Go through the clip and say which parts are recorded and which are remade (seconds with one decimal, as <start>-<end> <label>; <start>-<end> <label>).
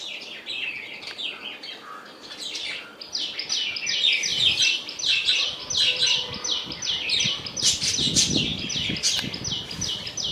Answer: 0.0-10.3 recorded